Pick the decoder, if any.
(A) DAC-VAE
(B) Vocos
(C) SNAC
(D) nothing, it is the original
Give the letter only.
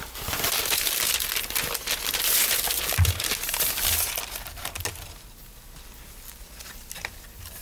D